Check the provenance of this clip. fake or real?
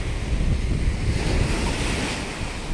real